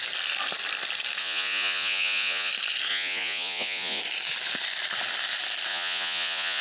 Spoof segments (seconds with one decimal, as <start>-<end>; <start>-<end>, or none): 1.2-2.5; 2.9-4.0; 5.7-6.6